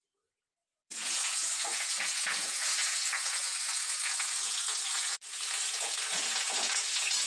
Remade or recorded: remade